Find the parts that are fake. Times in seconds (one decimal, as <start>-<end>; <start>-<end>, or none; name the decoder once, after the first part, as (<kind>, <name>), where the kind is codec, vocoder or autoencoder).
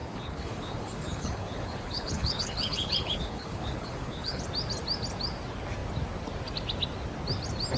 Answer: 0.0-4.4 (codec, HILCodec)